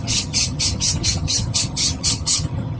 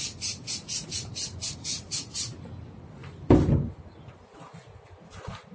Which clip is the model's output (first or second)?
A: first